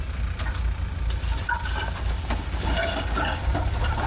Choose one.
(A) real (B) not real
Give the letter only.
A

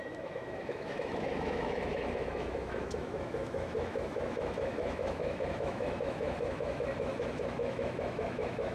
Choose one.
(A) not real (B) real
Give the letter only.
A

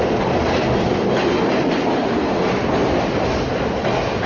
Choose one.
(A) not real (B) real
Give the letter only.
B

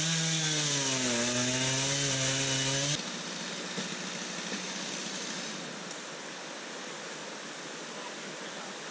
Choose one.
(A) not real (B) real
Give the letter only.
B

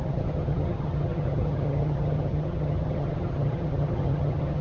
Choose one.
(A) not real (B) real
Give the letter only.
A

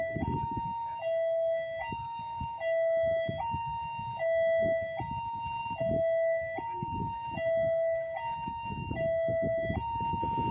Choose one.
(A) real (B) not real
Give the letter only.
A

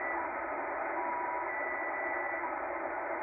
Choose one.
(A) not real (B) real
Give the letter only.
B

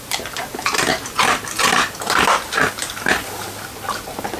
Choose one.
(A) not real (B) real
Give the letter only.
B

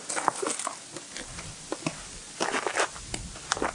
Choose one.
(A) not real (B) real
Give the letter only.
B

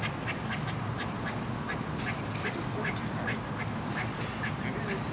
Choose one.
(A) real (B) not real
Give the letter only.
A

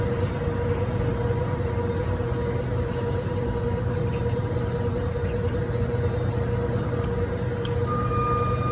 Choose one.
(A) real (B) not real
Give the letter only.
A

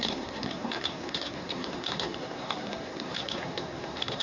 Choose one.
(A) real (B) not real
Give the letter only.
B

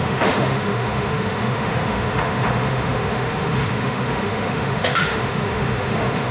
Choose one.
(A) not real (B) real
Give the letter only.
A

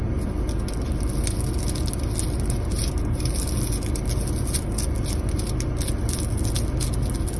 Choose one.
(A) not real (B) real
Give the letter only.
B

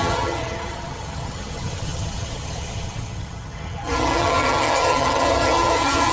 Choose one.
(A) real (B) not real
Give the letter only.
B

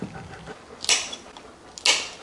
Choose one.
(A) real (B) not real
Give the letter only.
A